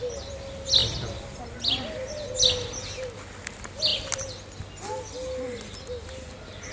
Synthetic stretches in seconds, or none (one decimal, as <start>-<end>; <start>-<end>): none